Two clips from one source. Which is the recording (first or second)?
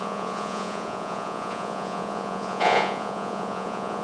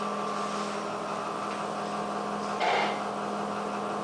second